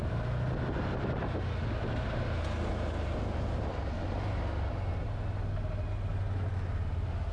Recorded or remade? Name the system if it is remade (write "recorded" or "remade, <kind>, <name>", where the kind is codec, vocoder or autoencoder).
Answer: recorded